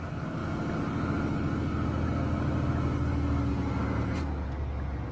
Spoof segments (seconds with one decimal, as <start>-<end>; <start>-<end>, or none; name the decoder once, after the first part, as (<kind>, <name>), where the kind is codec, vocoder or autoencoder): none